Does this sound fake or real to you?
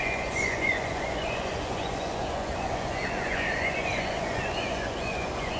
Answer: fake